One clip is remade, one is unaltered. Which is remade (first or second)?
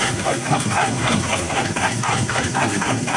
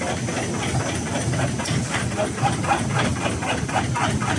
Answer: first